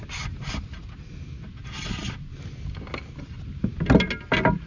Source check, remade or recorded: recorded